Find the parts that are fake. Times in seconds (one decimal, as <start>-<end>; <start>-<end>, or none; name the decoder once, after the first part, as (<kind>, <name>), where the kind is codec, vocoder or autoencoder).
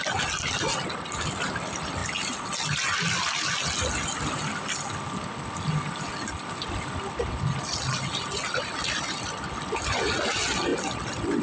none